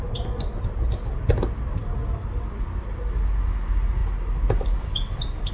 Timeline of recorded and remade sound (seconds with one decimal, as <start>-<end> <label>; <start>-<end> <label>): 0.0-5.5 recorded